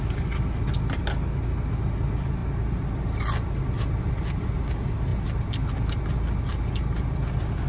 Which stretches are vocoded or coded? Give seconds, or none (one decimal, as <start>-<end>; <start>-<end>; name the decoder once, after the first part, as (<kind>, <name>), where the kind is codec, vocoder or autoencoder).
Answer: none